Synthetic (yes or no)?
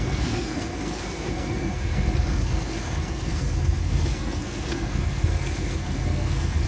yes